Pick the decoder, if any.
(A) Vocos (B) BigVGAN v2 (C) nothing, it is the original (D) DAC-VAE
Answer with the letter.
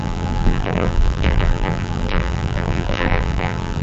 B